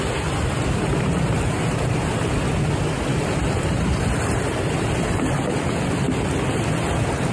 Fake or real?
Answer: real